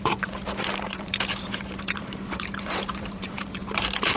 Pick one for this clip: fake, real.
fake